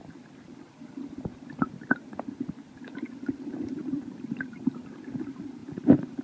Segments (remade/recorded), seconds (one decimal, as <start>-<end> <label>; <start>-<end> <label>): 0.0-3.8 recorded; 3.8-4.6 remade; 4.6-5.6 recorded; 5.6-6.2 remade